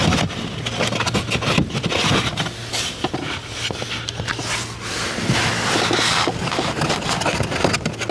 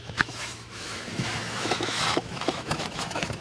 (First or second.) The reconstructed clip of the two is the second